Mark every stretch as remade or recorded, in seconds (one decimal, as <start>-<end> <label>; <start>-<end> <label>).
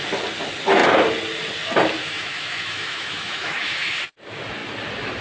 0.0-2.0 recorded; 2.0-4.0 remade; 4.0-5.2 recorded